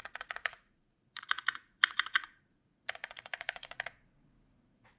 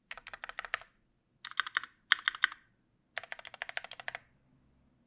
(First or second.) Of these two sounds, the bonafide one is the second